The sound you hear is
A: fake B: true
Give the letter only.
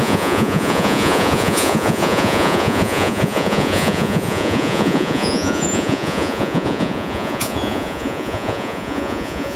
A